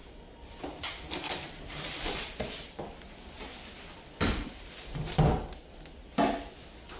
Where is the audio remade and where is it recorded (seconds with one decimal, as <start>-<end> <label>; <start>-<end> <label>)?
0.0-7.0 recorded